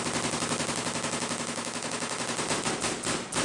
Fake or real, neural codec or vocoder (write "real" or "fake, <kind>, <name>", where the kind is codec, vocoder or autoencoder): real